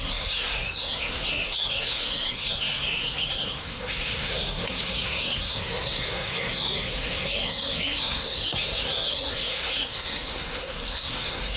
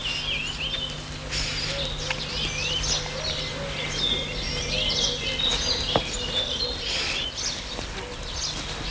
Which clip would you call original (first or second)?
second